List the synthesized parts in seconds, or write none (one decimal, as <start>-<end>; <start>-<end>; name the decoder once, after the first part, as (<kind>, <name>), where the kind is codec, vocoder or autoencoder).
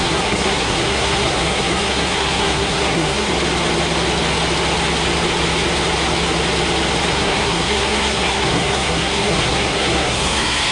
0.0-3.3 (codec, SNAC); 7.1-10.7